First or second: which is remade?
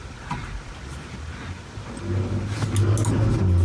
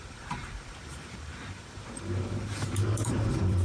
second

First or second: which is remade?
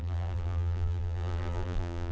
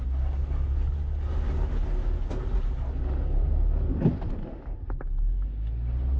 first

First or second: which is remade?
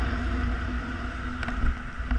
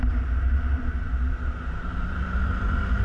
second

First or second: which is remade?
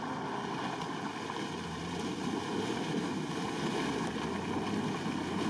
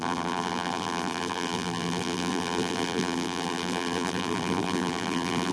second